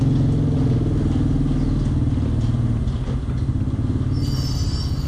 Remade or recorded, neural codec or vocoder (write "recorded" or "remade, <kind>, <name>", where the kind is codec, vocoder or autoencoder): recorded